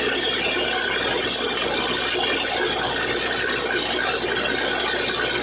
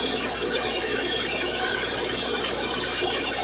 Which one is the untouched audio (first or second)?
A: first